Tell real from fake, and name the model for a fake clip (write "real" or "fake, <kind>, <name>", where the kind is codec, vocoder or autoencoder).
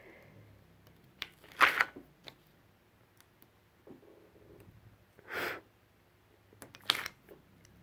real